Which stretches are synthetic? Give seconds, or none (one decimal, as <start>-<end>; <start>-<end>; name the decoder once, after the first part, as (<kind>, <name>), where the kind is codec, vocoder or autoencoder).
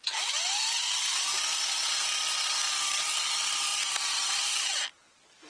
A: 3.7-4.8 (vocoder, BigVGAN v2)